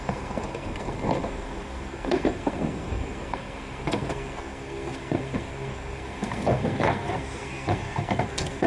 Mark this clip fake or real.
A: fake